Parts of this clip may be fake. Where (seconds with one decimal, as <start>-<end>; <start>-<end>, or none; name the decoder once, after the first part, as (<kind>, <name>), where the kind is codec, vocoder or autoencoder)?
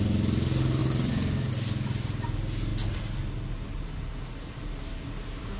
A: 0.8-1.5 (vocoder, BigVGAN v2)